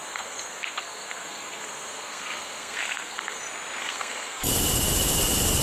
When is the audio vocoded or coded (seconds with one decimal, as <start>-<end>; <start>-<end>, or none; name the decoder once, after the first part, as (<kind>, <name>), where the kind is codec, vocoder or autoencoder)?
0.0-3.4 (codec, SNAC); 3.8-4.5